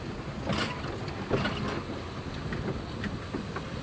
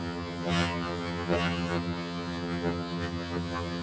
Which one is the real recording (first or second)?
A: first